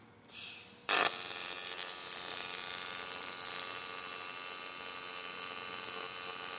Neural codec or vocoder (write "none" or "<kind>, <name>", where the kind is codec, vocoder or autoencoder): none